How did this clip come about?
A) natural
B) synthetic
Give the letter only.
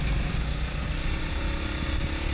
A